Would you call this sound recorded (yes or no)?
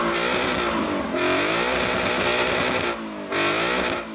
yes